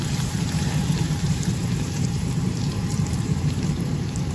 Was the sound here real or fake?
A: fake